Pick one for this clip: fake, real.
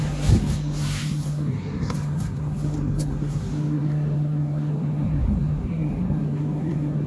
fake